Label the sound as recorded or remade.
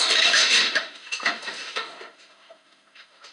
remade